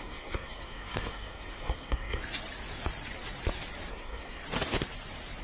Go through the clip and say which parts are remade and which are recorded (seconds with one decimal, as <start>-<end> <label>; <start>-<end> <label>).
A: 0.0-2.2 remade; 2.2-3.9 recorded; 3.9-4.4 remade; 4.4-5.4 recorded